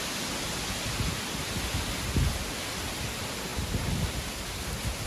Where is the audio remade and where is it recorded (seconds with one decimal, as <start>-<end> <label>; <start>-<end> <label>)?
0.0-5.1 recorded